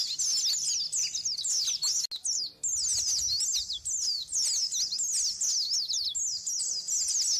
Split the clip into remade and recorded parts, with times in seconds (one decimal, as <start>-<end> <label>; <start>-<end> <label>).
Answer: 0.0-7.4 recorded

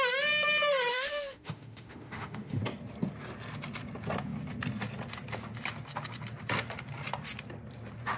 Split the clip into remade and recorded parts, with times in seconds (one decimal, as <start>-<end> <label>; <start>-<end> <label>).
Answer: 0.0-0.9 recorded; 0.9-2.6 remade; 2.6-8.2 recorded

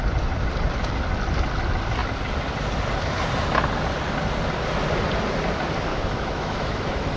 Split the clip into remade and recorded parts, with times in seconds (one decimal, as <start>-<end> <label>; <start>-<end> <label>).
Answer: 0.0-5.9 recorded; 5.9-7.2 remade

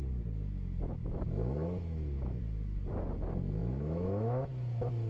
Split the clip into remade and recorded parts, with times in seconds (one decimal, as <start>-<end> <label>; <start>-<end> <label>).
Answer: 0.0-1.0 recorded; 1.0-2.4 remade; 2.4-3.6 recorded; 3.6-4.5 remade; 4.5-5.1 recorded

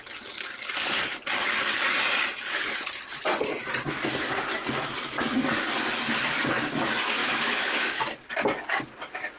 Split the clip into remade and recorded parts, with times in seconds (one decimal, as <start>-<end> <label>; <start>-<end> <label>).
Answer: 0.0-7.2 recorded; 7.2-8.0 remade; 8.0-9.4 recorded

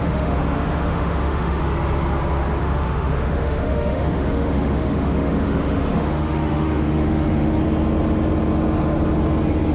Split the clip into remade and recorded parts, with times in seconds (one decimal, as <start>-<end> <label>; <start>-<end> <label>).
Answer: 0.0-1.6 remade; 1.6-2.6 recorded; 2.6-7.6 remade; 7.6-9.7 recorded

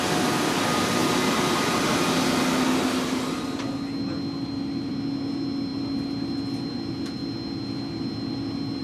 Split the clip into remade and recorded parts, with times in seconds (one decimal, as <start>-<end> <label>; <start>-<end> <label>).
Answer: 0.0-8.8 recorded